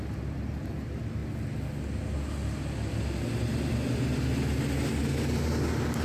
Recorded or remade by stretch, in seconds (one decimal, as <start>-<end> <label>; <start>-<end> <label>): 0.0-6.0 recorded